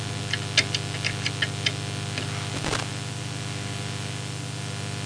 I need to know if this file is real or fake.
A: real